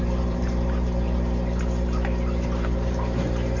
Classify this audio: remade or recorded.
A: remade